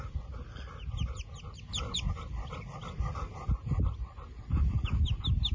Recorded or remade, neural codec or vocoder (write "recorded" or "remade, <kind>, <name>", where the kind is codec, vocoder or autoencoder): recorded